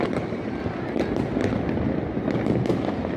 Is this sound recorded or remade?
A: recorded